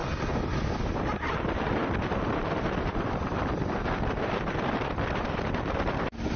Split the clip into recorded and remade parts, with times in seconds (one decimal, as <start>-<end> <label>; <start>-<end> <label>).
0.0-0.9 recorded; 0.9-6.4 remade